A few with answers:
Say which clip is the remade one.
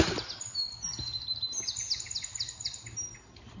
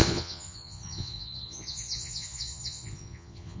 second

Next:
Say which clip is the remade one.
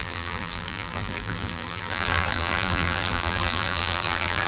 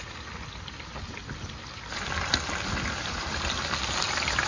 first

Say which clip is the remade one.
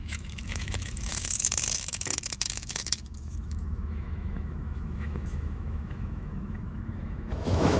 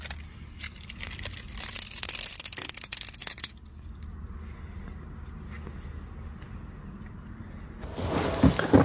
first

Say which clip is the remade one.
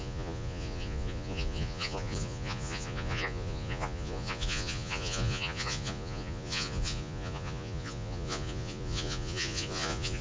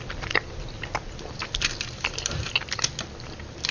first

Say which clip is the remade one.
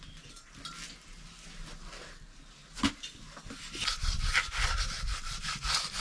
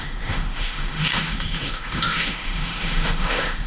second